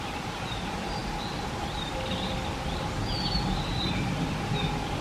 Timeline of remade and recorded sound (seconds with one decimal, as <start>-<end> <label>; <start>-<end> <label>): 0.0-5.0 recorded